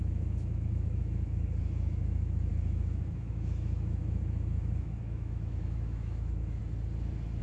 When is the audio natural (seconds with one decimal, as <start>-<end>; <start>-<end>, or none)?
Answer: 6.6-7.4